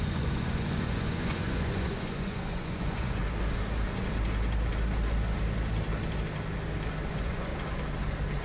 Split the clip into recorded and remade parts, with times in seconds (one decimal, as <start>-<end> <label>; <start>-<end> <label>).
0.0-3.2 remade; 3.2-7.1 recorded; 7.1-7.5 remade; 7.5-8.4 recorded